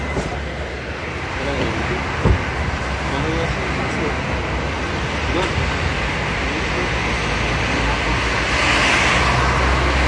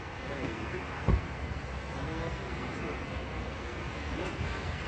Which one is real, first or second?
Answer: first